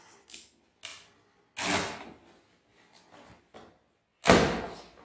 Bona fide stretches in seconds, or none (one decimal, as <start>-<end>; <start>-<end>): 0.0-5.0